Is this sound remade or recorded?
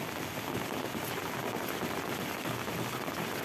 recorded